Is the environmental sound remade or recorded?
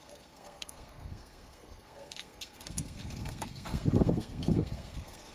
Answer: remade